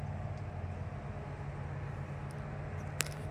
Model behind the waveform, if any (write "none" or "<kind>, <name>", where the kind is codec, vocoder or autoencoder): none